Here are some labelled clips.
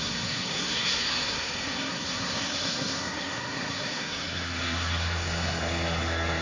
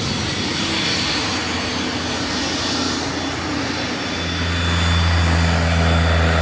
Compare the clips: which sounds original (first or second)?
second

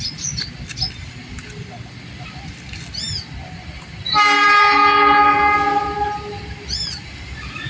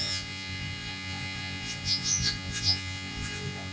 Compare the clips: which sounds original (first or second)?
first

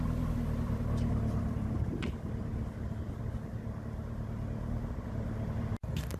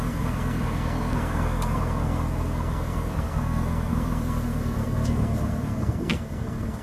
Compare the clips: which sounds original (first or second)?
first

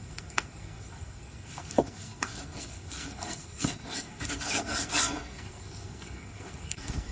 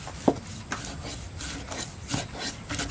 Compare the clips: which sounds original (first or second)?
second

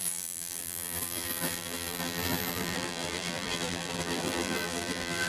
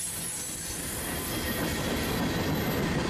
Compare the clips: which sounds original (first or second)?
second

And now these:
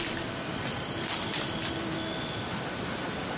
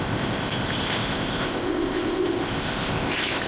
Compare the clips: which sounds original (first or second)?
first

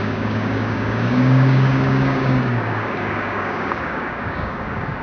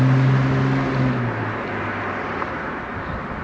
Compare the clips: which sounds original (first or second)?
second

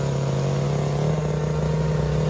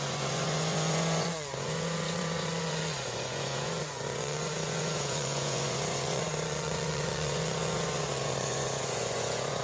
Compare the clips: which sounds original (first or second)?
first